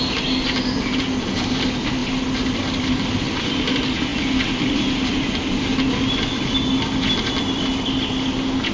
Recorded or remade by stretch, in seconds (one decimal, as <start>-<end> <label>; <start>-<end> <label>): 0.0-8.7 recorded